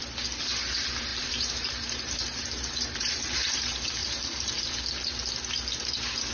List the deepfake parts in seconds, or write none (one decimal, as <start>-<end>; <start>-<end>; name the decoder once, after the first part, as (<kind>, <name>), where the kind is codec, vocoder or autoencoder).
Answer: 1.1-3.6 (vocoder, BigVGAN v2); 4.0-4.7

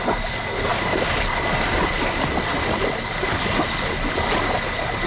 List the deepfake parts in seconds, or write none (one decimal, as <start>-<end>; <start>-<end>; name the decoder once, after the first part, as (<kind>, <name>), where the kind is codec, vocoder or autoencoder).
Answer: 3.2-4.4 (vocoder, BigVGAN v2)